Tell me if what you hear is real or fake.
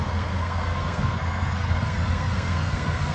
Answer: fake